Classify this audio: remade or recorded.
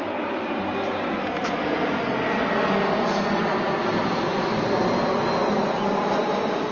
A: recorded